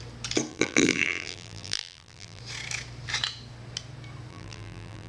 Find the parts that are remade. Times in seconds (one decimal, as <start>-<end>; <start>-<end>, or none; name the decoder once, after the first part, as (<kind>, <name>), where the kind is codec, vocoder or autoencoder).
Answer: 0.5-2.4 (vocoder, BigVGAN v2); 4.3-5.1